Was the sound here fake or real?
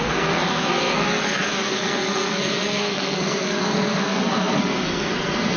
fake